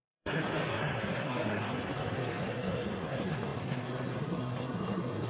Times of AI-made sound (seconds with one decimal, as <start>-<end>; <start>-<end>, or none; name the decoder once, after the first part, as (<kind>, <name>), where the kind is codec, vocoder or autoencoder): 0.0-5.3 (codec, SNAC)